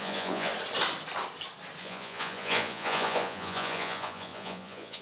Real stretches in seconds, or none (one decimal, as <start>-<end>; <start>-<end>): 0.5-1.8

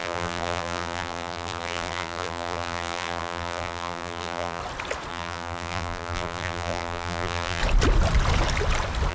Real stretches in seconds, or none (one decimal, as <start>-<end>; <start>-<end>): 4.6-5.1; 7.6-9.1

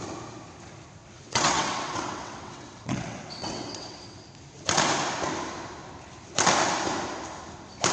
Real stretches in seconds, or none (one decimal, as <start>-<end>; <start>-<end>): 0.0-1.0; 4.2-7.9

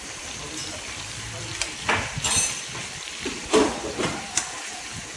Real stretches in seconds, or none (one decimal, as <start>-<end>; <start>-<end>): none